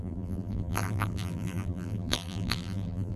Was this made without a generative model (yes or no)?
no